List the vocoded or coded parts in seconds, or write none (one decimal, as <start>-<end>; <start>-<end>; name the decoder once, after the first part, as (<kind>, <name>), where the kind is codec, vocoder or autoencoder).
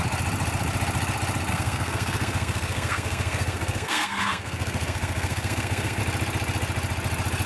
1.5-6.0 (codec, SNAC)